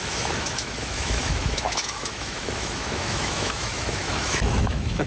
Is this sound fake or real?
fake